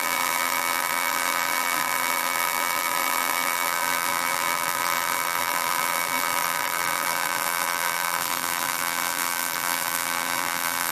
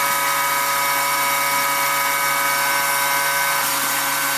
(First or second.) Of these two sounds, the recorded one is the second